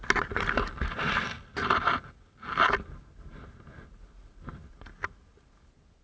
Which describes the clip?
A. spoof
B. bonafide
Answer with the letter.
B